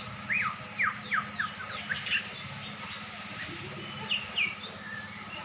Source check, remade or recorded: recorded